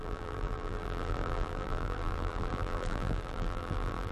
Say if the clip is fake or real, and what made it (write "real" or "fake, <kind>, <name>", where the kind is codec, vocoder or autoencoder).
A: fake, vocoder, BigVGAN v2